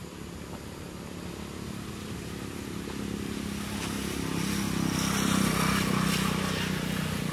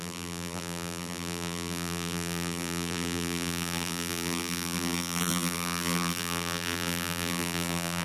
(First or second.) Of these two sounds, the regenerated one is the second